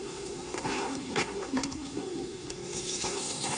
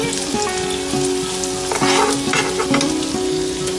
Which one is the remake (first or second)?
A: first